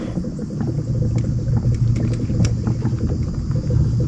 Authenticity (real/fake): real